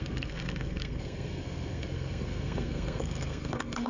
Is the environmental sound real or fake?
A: fake